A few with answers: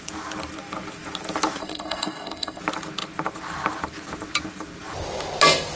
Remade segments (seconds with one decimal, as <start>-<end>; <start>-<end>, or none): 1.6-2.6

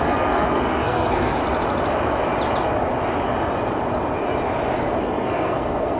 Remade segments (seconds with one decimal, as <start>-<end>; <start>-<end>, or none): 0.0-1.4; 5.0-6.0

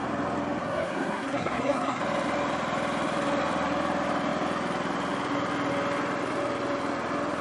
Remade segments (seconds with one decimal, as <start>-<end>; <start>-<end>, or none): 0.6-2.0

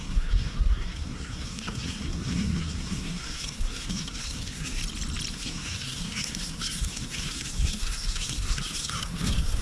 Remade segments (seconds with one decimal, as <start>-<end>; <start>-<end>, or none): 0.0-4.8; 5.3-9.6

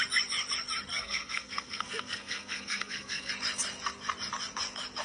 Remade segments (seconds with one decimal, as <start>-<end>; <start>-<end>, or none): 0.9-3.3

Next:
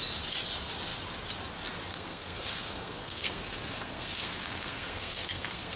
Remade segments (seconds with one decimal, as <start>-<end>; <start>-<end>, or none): 1.9-5.8

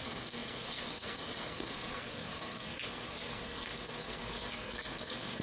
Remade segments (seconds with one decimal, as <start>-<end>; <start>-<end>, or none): 0.0-5.4

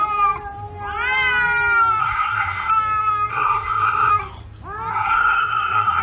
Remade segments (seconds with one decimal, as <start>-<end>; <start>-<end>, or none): 2.0-2.7; 3.3-4.1; 4.9-6.0